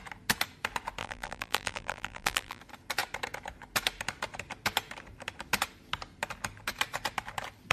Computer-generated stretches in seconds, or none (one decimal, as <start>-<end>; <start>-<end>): 1.0-2.6